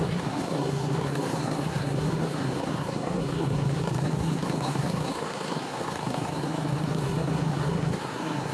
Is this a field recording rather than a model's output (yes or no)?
no